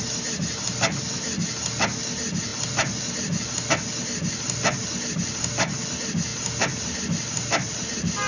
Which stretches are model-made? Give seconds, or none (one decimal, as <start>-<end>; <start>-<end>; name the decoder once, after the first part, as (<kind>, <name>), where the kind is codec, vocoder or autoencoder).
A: none